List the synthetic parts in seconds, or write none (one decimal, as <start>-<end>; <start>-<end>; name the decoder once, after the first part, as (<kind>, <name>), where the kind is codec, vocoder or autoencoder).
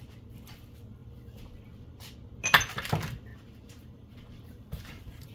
3.3-5.3 (vocoder, BigVGAN v2)